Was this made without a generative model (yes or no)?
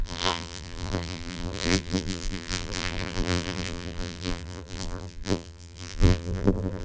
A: no